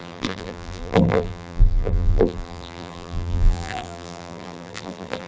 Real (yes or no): no